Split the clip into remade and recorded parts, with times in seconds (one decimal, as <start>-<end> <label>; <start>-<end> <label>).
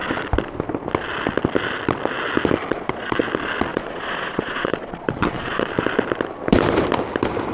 0.0-2.7 recorded; 2.7-3.2 remade; 3.2-3.7 recorded; 3.7-5.7 remade; 5.7-7.5 recorded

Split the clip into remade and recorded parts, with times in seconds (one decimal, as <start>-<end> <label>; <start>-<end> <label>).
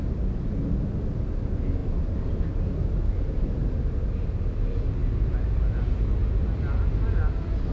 0.0-7.7 recorded